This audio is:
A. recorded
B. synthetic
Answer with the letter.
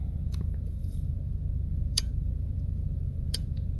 B